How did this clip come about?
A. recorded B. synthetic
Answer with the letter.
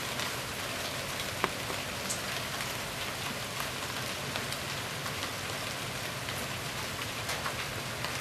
A